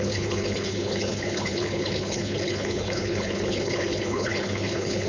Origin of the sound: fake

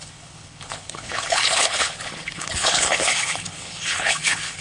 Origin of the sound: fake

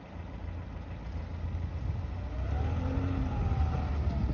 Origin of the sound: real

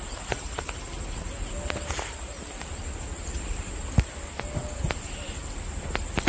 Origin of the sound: real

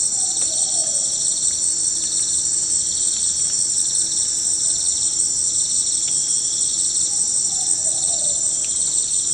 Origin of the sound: real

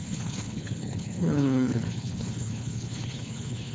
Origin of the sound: fake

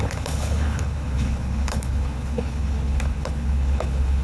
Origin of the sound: fake